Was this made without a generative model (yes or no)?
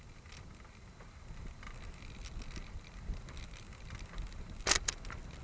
yes